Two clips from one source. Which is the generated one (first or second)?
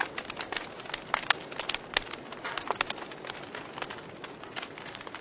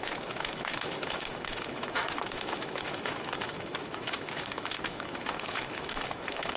second